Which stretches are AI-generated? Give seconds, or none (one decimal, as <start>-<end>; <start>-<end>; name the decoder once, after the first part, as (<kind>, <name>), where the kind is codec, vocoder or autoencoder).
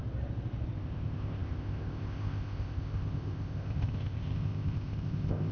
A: 0.8-5.5 (codec, ZipCodec)